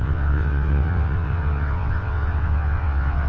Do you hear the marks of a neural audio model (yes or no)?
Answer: yes